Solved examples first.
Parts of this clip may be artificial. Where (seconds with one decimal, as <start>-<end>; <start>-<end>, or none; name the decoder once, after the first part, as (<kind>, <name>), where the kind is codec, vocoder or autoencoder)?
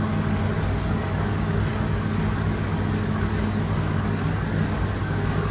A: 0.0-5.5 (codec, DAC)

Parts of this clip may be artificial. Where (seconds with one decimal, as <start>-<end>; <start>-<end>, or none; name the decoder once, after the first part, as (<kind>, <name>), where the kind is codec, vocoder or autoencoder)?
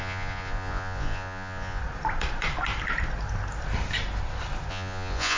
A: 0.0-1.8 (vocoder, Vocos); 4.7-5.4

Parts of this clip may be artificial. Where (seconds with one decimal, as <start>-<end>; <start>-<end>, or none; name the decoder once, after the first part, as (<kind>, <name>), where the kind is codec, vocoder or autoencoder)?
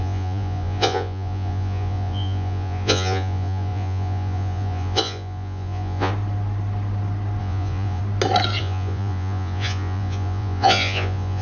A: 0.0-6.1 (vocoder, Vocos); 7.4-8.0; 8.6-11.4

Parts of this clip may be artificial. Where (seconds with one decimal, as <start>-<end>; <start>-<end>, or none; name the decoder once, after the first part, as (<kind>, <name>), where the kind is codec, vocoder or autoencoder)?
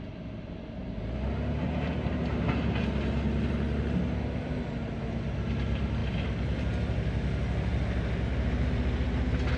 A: none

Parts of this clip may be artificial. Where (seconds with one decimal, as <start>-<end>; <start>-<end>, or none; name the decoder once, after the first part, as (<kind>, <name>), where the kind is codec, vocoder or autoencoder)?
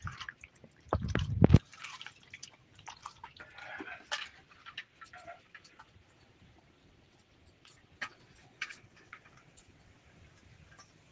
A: 6.8-9.9 (vocoder, WaveNeXt)